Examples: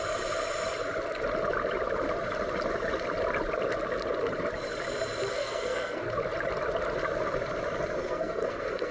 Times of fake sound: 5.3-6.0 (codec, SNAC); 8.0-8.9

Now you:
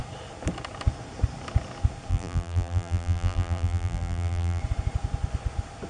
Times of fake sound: 2.1-4.6 (vocoder, BigVGAN v2)

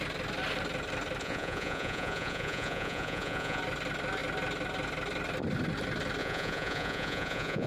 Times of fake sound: 1.2-3.6 (vocoder, Vocos); 6.2-7.7

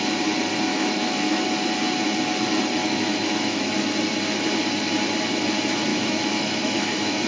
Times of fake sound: 0.7-1.5 (autoencoder, DAC-VAE); 2.8-3.7; 5.9-7.3

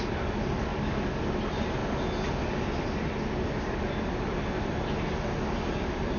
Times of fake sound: 0.7-1.2 (codec, DAC)

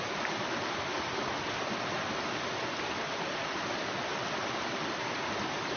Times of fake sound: none